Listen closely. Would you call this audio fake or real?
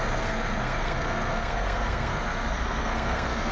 fake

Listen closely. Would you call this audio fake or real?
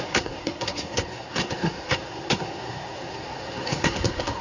fake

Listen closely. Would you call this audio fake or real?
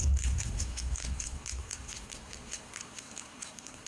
fake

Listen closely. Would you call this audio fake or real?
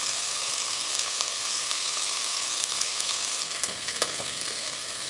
fake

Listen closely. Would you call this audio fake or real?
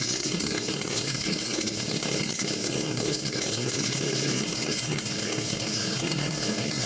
fake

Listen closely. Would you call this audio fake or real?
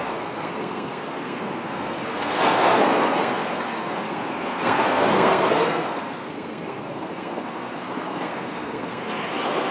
fake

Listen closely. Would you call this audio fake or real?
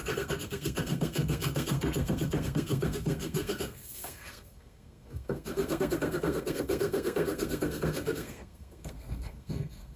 fake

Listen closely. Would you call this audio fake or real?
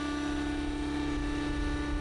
real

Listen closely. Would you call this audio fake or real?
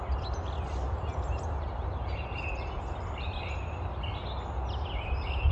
real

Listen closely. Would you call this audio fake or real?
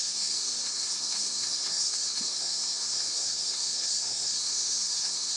fake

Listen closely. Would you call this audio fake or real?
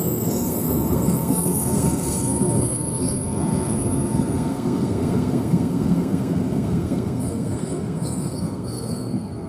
fake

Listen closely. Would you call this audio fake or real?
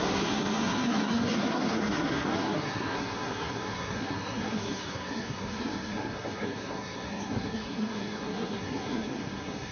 fake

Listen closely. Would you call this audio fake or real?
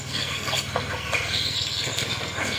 fake